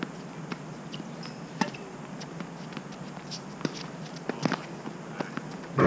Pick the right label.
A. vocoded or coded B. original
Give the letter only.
B